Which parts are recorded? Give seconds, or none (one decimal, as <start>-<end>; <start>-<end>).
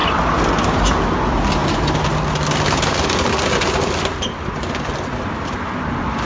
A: 0.0-6.3